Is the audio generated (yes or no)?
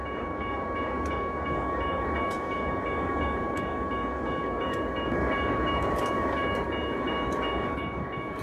yes